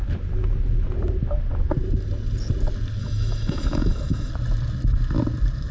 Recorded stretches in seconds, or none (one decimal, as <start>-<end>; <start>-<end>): 0.0-3.0; 4.3-5.7